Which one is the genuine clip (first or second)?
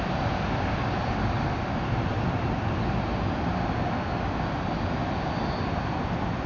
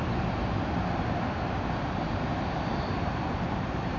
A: first